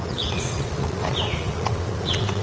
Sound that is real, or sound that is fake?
fake